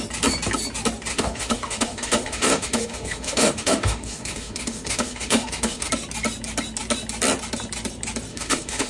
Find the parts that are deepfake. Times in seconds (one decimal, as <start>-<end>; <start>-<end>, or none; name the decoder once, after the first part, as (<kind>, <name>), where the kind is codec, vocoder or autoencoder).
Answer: 1.1-5.9 (autoencoder, DAC-VAE); 8.3-8.9